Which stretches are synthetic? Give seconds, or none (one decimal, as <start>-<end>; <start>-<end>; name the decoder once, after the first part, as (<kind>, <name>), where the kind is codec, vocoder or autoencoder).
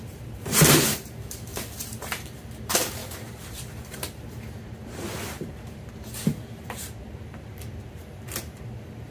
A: 0.0-1.5 (vocoder, BigVGAN v2); 2.6-9.1